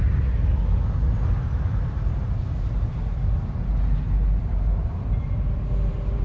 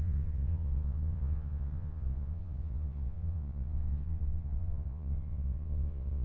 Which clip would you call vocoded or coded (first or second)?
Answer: second